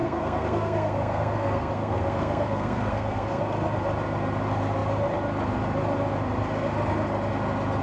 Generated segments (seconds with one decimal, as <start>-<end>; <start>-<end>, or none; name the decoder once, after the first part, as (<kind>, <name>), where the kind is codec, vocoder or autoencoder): 0.0-3.4 (codec, SNAC)